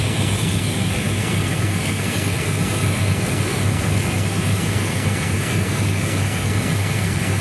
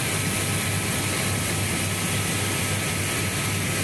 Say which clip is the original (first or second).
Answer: second